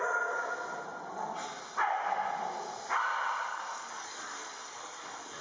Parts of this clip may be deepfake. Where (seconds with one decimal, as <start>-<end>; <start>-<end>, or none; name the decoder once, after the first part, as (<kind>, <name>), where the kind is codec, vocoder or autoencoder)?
3.5-5.4 (codec, DAC)